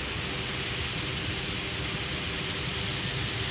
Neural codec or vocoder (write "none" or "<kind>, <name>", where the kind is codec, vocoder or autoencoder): none